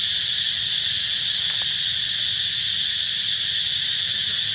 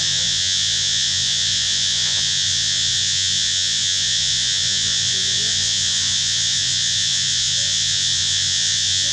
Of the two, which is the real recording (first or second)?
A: first